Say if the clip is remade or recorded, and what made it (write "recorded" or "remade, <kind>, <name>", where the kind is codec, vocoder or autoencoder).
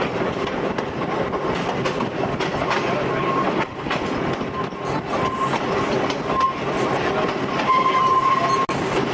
recorded